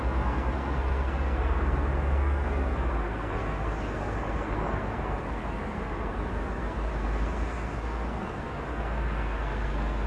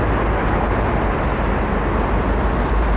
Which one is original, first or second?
second